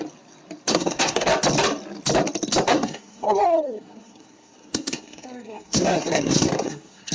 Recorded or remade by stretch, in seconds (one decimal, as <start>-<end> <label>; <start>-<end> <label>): 0.0-0.7 recorded; 0.7-1.3 remade; 1.3-2.7 recorded; 2.7-7.1 remade